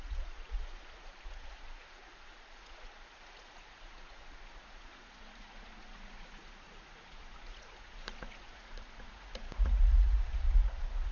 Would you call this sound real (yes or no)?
no